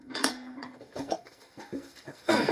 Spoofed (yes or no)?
yes